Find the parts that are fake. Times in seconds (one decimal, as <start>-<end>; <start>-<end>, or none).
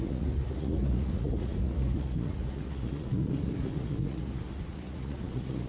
0.0-5.7